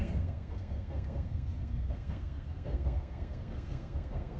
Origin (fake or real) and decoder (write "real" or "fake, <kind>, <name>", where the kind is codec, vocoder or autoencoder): fake, codec, SNAC